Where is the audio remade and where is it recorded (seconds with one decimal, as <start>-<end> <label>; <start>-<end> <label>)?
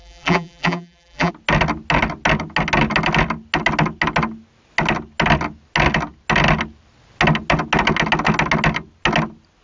0.0-1.3 remade; 1.3-9.6 recorded